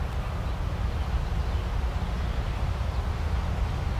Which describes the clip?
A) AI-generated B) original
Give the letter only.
B